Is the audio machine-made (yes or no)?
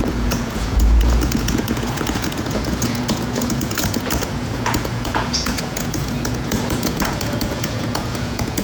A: yes